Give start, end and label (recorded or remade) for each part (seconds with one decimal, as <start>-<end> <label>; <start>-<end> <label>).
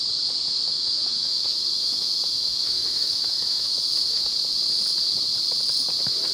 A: 0.0-0.5 recorded; 0.5-4.3 remade; 4.3-6.3 recorded